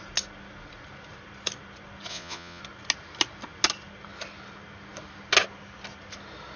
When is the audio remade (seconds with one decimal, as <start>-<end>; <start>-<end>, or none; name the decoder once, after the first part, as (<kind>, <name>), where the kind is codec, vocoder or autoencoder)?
2.1-2.6 (vocoder, Vocos)

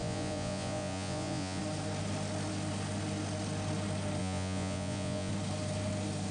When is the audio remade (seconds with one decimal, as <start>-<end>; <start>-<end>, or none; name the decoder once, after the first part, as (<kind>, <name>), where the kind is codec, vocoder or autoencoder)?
0.0-1.6 (vocoder, Vocos); 4.2-5.3

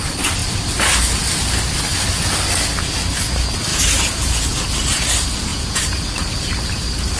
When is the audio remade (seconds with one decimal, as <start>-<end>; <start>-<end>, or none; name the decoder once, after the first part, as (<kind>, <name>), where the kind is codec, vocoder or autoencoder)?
3.7-4.6 (vocoder, Vocos); 5.5-6.0

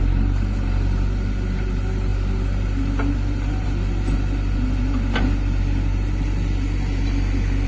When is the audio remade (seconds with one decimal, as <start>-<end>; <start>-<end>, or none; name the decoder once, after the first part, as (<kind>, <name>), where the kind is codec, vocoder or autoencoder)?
none

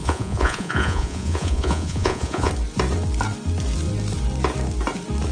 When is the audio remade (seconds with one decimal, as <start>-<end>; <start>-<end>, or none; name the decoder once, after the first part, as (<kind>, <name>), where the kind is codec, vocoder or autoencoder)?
0.0-2.5 (vocoder, Vocos)

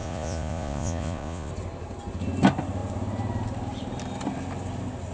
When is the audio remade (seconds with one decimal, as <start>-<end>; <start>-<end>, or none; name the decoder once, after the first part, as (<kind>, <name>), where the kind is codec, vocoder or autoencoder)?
0.0-1.5 (vocoder, Vocos)

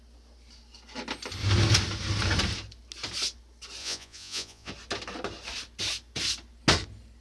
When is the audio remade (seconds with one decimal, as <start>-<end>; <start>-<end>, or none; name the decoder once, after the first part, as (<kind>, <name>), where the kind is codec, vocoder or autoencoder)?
3.8-4.7 (vocoder, Vocos)

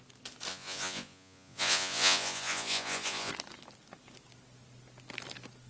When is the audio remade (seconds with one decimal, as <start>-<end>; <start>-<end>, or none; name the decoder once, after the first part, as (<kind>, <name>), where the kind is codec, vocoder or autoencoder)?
0.5-3.3 (vocoder, Vocos)